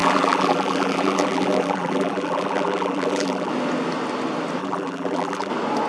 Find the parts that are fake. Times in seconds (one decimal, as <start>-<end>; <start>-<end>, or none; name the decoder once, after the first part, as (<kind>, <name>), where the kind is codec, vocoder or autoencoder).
0.0-3.5 (vocoder, BigVGAN v2); 4.6-5.5